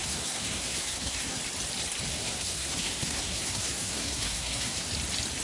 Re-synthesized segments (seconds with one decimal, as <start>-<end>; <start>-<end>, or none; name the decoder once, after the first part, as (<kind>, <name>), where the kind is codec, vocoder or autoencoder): 0.0-1.4 (codec, SNAC); 2.1-4.9